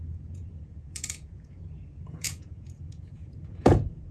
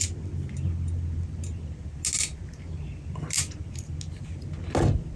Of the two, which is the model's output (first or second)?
first